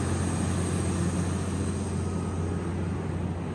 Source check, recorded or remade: recorded